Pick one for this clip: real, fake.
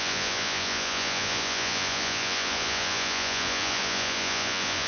fake